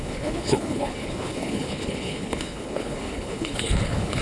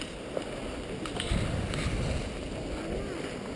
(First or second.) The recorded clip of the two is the second